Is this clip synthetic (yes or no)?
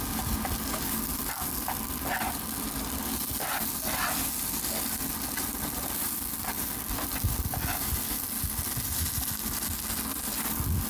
no